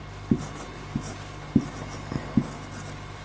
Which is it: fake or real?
real